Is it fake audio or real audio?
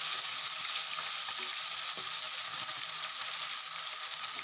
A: real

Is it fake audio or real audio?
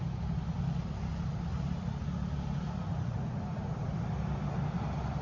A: real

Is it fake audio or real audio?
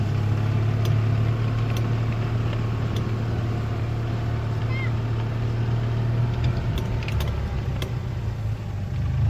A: real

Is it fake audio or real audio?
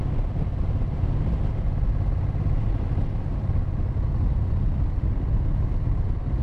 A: real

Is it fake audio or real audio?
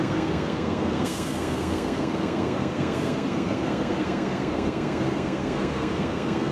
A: fake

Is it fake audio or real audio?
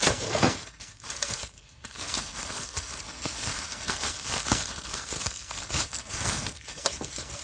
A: fake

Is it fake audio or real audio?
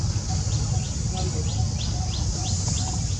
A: real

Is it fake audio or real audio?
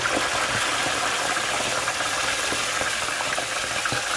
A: real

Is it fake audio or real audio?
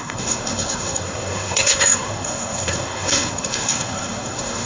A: fake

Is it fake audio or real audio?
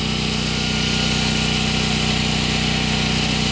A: real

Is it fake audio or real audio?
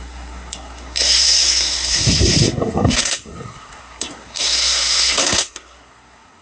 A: fake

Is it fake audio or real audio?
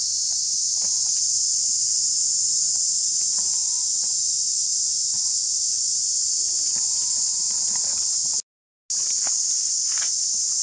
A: real